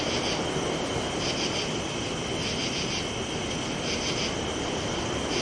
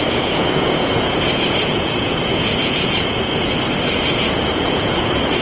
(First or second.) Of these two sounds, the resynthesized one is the second